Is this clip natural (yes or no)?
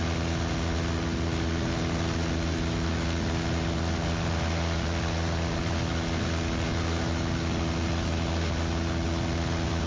yes